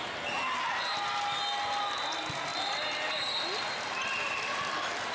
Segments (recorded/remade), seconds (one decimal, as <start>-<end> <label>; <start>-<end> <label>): 0.0-5.1 recorded

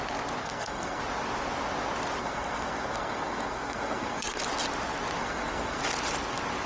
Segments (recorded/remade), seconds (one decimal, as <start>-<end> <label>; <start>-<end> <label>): 0.0-0.4 recorded; 0.4-1.0 remade; 1.0-2.2 recorded; 2.2-4.4 remade; 4.4-5.2 recorded; 5.2-5.8 remade; 5.8-6.7 recorded

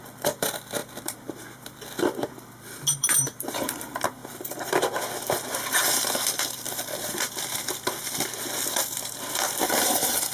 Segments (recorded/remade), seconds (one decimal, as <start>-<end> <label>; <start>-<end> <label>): 0.0-10.3 remade

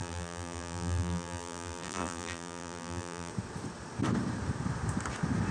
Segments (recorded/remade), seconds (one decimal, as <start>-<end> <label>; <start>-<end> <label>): 0.0-3.3 remade; 3.3-5.5 recorded

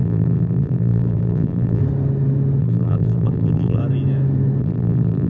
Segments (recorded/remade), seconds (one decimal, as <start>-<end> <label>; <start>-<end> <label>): 0.0-1.8 remade; 1.8-2.6 recorded; 2.6-3.8 remade; 3.8-4.6 recorded; 4.6-5.3 remade

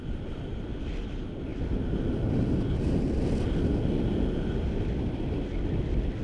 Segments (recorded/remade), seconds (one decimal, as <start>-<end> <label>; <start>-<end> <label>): 0.0-6.2 recorded

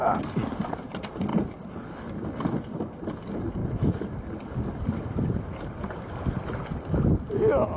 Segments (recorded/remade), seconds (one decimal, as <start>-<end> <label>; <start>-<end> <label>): 0.0-7.8 recorded